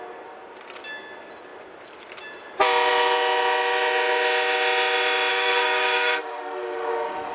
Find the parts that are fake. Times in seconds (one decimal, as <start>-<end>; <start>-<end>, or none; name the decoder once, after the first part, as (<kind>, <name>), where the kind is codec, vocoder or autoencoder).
5.3-7.3 (codec, DAC)